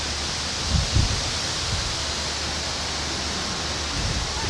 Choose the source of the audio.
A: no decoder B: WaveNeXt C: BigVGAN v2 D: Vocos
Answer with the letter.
A